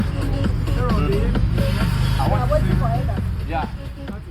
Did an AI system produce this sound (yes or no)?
no